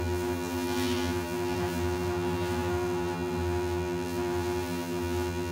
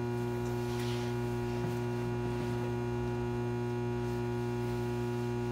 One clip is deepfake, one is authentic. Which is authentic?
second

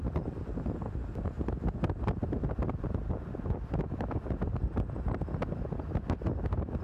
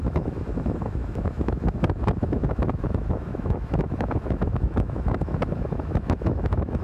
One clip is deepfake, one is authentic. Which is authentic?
first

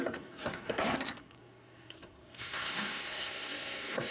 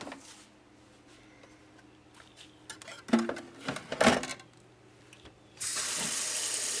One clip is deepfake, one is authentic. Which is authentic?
second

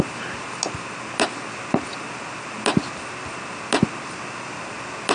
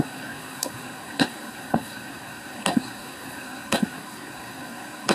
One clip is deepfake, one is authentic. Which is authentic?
first